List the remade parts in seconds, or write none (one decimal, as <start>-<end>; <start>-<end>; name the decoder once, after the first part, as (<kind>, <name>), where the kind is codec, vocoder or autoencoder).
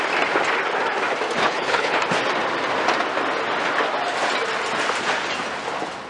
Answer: 1.4-2.0 (codec, HILCodec)